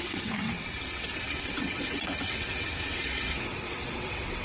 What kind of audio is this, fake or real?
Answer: fake